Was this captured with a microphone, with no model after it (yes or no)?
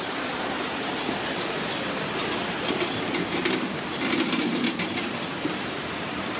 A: no